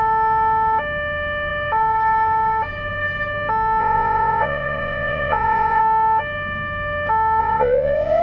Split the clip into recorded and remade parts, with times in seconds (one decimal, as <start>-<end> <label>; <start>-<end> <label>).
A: 0.0-3.8 recorded; 3.8-5.8 remade; 5.8-7.4 recorded; 7.4-8.2 remade